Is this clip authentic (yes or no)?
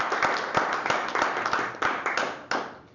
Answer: yes